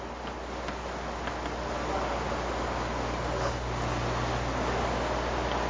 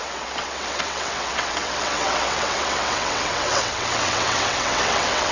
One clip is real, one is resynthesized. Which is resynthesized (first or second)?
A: second